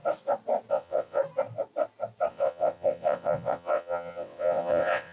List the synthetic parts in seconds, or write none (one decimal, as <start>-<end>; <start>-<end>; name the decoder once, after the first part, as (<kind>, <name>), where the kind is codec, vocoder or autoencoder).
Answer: 0.7-1.2 (vocoder, WaveNeXt); 2.3-5.1